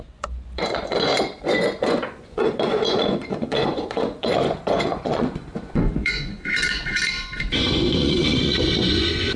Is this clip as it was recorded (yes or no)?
no